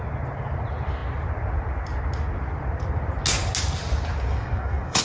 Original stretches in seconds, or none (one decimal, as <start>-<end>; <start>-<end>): 0.0-4.3